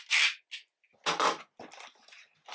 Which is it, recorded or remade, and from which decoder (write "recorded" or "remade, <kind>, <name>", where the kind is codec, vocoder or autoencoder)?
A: recorded